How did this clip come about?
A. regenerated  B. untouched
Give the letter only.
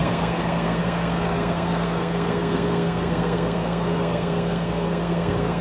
A